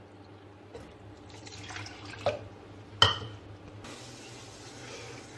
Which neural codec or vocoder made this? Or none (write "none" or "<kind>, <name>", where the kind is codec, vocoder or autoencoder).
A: none